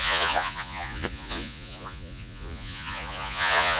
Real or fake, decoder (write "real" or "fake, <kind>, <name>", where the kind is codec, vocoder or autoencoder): fake, vocoder, Vocos